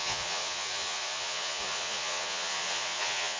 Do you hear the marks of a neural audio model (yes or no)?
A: yes